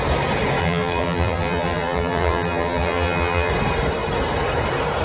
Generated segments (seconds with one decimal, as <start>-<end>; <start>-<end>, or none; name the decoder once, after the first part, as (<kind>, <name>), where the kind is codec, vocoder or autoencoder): 0.6-3.5 (vocoder, BigVGAN v2)